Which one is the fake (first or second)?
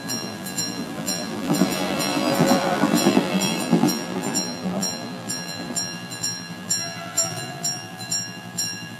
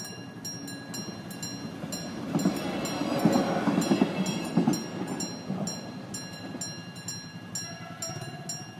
first